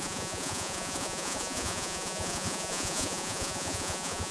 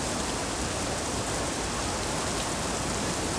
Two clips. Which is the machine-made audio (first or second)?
first